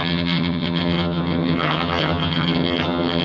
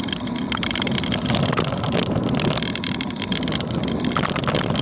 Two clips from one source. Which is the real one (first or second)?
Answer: second